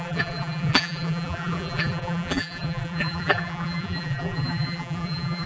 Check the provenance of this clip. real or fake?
fake